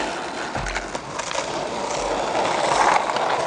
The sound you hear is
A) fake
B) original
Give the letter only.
B